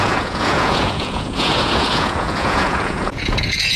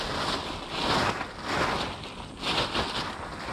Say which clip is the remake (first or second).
first